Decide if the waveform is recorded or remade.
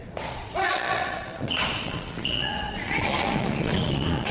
remade